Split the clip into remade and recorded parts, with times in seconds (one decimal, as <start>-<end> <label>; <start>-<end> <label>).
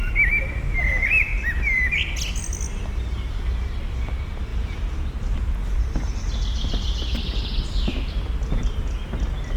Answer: 0.0-8.6 recorded; 8.6-9.6 remade